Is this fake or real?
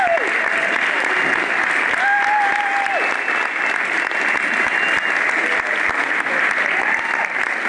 real